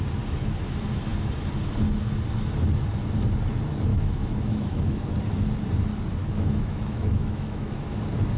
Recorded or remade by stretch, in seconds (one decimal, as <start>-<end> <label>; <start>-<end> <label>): 0.0-3.9 recorded; 3.9-5.2 remade; 5.2-6.2 recorded; 6.2-8.0 remade; 8.0-8.4 recorded